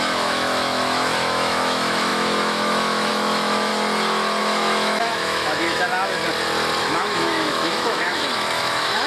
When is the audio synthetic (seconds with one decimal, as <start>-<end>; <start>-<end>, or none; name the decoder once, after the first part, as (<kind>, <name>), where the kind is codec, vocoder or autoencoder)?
0.0-3.7 (autoencoder, DAC-VAE); 4.4-6.2; 6.8-9.1